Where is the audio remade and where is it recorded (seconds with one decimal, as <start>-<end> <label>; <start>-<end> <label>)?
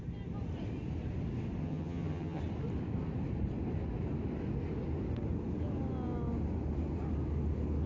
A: 0.0-1.6 recorded; 1.6-2.4 remade; 2.4-7.9 recorded